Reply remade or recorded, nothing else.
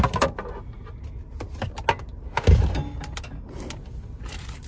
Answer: recorded